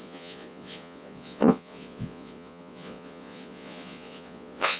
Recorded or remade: remade